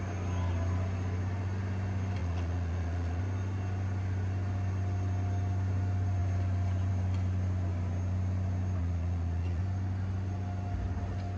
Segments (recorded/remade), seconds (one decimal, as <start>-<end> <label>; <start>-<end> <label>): 0.0-2.2 recorded; 2.2-3.2 remade; 3.2-8.8 recorded; 8.8-9.6 remade; 9.6-11.4 recorded